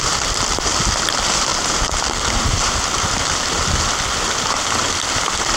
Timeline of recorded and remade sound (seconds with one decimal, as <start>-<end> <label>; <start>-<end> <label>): 0.0-1.5 recorded; 1.5-3.9 remade; 3.9-5.6 recorded

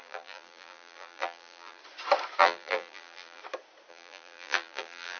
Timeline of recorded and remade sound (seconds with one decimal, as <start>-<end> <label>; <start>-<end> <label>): 0.0-1.8 remade; 1.8-2.4 recorded; 2.4-3.4 remade; 3.4-3.9 recorded; 3.9-5.2 remade

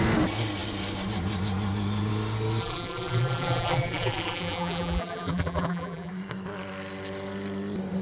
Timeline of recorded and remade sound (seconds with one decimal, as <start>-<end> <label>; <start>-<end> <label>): 0.0-2.6 recorded; 2.6-6.1 remade; 6.1-8.0 recorded

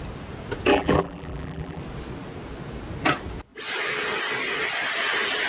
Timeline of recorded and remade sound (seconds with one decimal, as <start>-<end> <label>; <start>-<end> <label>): 0.0-0.7 recorded; 0.7-1.8 remade; 1.8-5.5 recorded

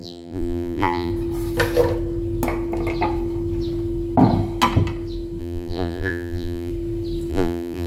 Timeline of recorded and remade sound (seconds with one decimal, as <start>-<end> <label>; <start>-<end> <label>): 0.0-1.1 remade; 1.1-5.4 recorded; 5.4-6.7 remade; 6.7-7.3 recorded; 7.3-7.9 remade

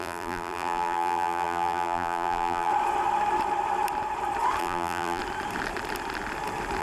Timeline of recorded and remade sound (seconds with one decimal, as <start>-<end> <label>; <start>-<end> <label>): 0.0-2.7 remade; 2.7-4.6 recorded; 4.6-5.2 remade; 5.2-6.8 recorded

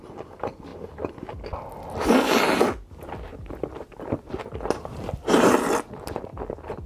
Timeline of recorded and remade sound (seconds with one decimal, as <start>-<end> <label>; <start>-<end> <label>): 0.0-3.3 recorded; 3.3-5.3 remade; 5.3-6.9 recorded